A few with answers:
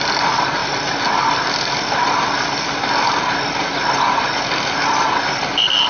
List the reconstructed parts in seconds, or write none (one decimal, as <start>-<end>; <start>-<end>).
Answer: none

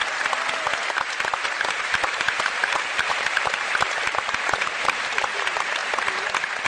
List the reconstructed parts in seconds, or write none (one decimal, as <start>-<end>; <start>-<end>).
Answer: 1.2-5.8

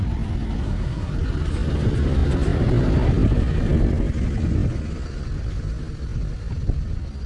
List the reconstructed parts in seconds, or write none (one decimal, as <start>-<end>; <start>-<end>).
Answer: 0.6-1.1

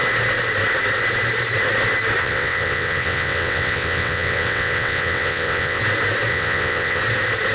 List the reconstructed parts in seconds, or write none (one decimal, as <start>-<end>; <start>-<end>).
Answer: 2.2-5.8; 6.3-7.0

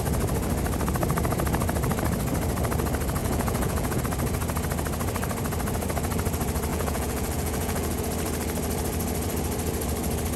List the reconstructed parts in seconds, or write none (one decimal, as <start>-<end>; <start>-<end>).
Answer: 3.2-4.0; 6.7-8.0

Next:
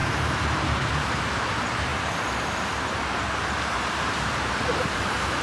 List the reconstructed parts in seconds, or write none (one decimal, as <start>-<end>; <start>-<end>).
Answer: 0.0-1.2; 1.9-5.4

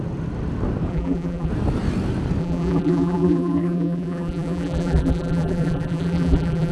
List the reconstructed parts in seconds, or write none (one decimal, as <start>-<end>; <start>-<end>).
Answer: 0.9-1.5; 2.4-6.7